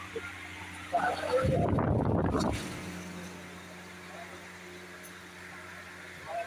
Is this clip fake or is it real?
fake